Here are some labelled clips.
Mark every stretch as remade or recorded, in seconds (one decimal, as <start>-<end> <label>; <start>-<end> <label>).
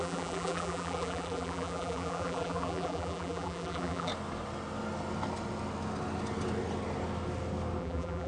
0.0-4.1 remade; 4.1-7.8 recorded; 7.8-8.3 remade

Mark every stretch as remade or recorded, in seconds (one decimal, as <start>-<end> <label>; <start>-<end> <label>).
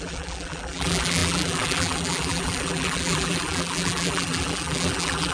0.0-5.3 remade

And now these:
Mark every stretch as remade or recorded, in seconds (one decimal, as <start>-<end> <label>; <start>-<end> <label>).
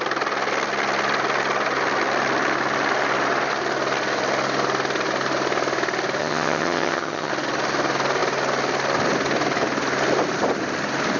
0.0-6.2 recorded; 6.2-7.3 remade; 7.3-11.2 recorded